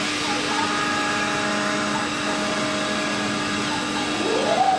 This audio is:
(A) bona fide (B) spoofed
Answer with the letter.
A